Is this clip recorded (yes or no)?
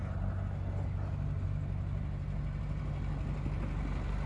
yes